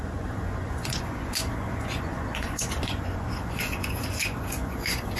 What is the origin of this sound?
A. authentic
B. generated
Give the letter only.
B